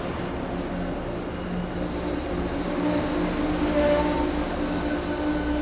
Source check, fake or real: real